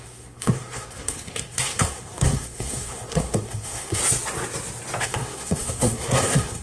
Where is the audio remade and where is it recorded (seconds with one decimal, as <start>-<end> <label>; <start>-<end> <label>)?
0.0-4.0 remade; 4.0-5.0 recorded; 5.0-6.6 remade